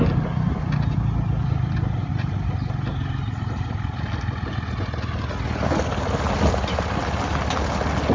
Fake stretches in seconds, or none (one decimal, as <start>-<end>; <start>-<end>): none

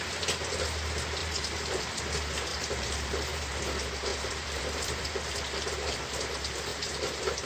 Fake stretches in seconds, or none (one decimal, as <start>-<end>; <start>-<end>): 1.2-2.0; 2.5-3.6; 4.1-6.1; 6.7-7.5

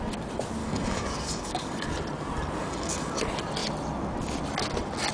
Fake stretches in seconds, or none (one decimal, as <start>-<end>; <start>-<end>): 0.6-1.9; 2.6-3.2

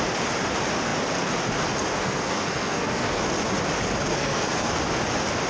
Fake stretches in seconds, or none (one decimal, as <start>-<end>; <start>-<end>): 1.9-3.2; 4.1-4.7

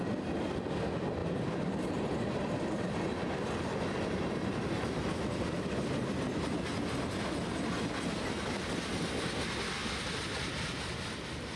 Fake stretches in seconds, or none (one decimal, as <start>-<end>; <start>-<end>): none